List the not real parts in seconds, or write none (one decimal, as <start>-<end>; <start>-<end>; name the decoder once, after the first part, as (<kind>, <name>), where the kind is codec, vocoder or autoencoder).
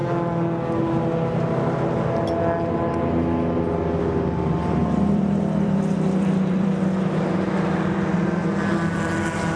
4.8-6.7 (vocoder, BigVGAN v2)